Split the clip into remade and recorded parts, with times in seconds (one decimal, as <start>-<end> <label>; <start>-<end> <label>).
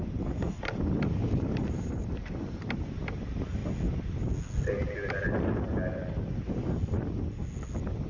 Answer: 0.0-1.2 recorded; 1.2-2.4 remade; 2.4-8.1 recorded